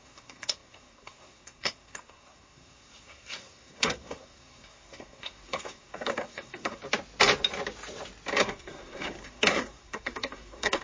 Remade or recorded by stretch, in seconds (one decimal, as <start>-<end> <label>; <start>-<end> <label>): 0.0-6.8 remade; 6.8-8.4 recorded; 8.4-10.8 remade